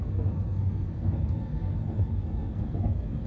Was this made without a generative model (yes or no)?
no